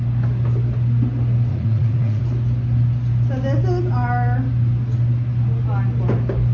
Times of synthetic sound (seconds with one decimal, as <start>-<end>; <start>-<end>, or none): 1.5-2.2